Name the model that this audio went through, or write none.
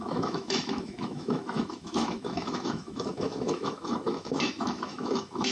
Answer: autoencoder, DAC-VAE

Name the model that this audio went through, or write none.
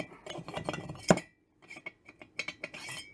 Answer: none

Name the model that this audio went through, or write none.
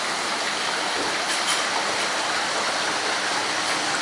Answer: none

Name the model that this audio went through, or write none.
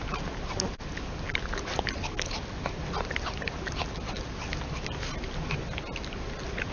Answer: none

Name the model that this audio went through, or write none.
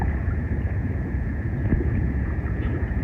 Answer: vocoder, Vocos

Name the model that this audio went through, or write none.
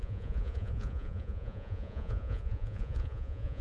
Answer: vocoder, Vocos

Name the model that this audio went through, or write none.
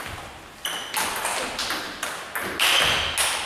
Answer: none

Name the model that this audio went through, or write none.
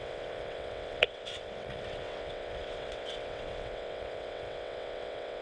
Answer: vocoder, WaveNeXt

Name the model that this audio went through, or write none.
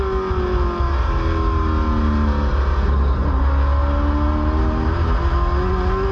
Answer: none